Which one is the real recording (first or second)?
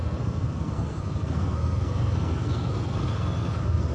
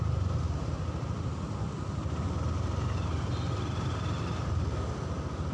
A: second